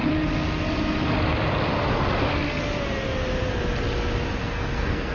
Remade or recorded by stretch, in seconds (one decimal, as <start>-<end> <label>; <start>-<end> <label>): 0.0-4.4 recorded; 4.4-5.1 remade

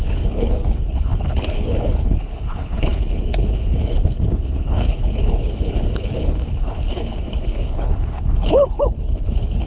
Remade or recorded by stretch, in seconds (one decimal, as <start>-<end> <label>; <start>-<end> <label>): 0.0-9.7 remade

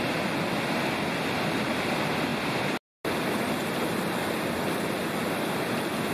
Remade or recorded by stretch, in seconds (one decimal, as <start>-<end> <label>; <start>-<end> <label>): 0.0-2.3 recorded; 2.3-2.8 remade; 2.8-6.1 recorded

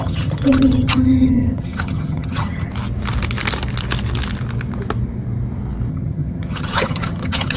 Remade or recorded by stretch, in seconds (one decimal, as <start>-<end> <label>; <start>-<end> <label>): 0.0-2.7 remade; 2.7-5.9 recorded; 5.9-7.6 remade

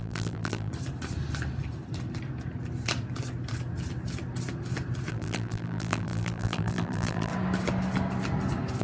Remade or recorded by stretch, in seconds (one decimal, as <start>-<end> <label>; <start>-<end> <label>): 0.0-0.7 remade; 0.7-5.1 recorded; 5.1-7.3 remade; 7.3-8.8 recorded

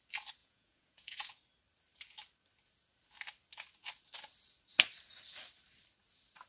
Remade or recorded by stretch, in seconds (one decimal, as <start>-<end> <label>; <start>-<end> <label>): 0.0-0.4 recorded; 0.4-1.3 remade; 1.3-6.5 recorded